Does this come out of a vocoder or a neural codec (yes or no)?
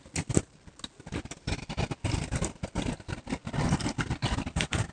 no